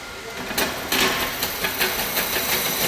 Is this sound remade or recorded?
recorded